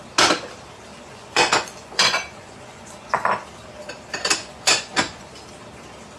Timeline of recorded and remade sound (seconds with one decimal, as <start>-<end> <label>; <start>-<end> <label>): 0.0-0.9 recorded; 0.9-3.3 remade; 3.3-4.4 recorded; 4.4-5.3 remade; 5.3-6.2 recorded